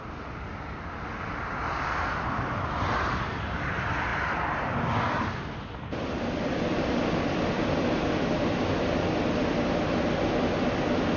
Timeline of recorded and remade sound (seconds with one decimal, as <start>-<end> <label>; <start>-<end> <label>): 0.0-11.2 recorded